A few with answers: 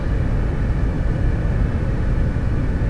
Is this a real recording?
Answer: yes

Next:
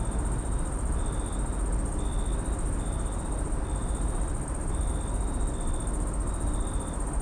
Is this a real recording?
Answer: yes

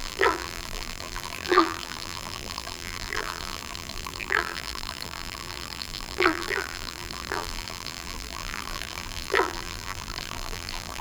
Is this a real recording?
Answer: no